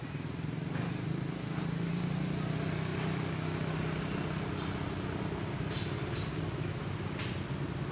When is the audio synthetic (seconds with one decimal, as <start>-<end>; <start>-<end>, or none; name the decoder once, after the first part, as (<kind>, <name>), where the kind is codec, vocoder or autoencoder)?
none